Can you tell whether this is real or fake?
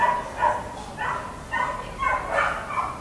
real